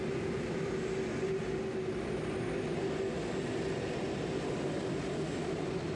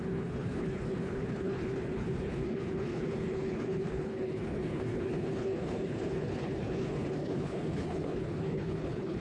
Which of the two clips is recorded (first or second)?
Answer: first